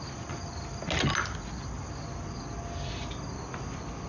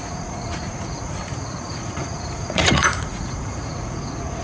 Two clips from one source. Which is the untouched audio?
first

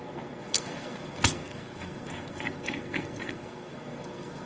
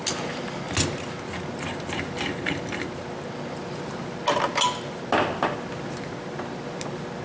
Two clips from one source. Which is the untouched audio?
second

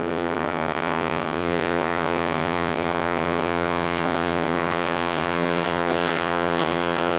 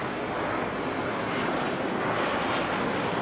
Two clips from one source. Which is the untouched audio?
second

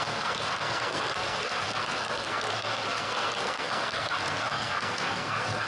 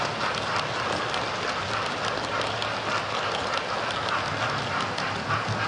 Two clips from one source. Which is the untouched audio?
second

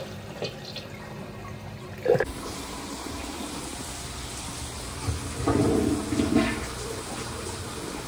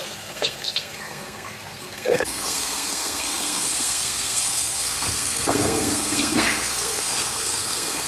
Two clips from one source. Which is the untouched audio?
first